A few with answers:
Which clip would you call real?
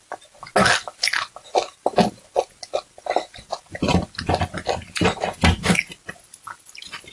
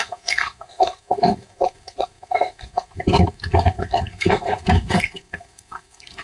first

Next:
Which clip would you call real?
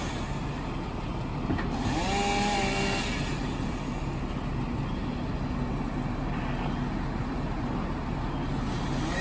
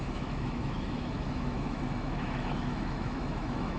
first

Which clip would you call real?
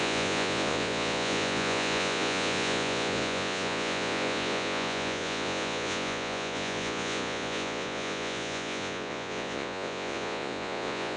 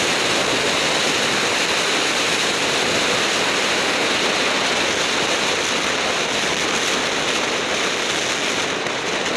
second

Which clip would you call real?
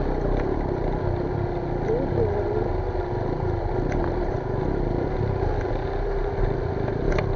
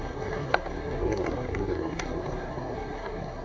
first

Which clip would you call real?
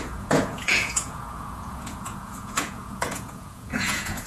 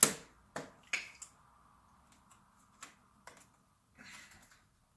second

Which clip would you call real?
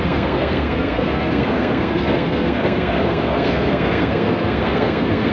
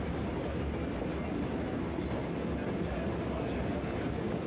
second